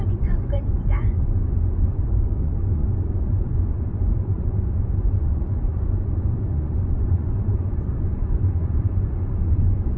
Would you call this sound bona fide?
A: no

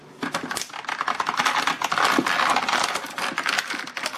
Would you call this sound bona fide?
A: yes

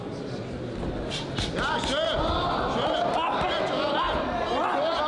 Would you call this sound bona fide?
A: yes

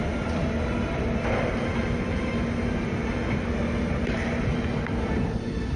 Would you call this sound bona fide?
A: yes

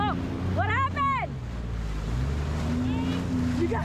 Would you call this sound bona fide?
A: yes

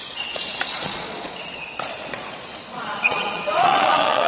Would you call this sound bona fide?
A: no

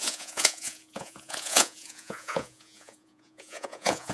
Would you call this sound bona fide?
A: no